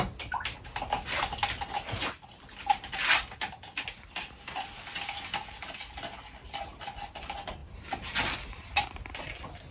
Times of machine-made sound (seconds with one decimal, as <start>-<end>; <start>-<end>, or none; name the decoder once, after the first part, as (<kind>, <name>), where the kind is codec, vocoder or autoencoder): none